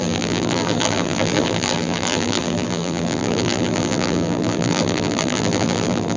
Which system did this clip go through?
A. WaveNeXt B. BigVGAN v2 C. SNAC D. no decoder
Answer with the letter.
B